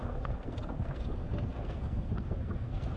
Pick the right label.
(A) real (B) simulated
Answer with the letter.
B